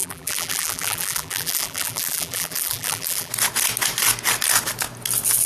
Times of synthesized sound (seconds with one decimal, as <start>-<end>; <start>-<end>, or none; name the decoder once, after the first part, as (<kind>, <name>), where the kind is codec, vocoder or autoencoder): 0.0-3.3 (vocoder, BigVGAN v2)